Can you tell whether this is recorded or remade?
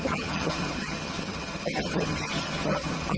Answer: remade